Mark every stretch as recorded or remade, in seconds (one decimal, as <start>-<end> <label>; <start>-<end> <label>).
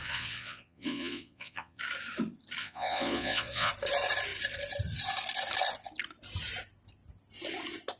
0.0-1.8 remade; 1.8-2.6 recorded; 2.6-3.7 remade; 3.7-8.0 recorded